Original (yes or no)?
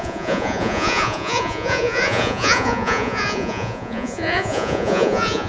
no